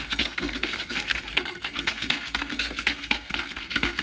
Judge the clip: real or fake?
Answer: fake